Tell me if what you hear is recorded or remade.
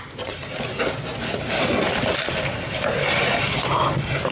recorded